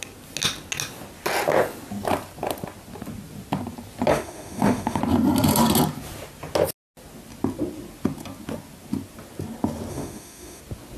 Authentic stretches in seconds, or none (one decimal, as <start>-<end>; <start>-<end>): 0.0-4.1; 5.0-9.9; 10.6-11.0